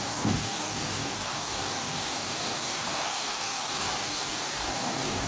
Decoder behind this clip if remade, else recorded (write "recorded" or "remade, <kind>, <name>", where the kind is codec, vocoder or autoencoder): remade, codec, DAC